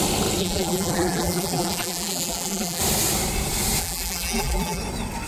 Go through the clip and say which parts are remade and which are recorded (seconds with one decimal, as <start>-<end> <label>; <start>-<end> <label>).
0.0-0.4 recorded; 0.4-2.8 remade; 2.8-3.8 recorded; 3.8-4.8 remade; 4.8-5.3 recorded